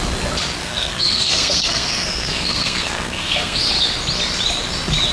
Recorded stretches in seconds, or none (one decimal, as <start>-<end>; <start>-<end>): 0.0-0.6; 3.7-5.1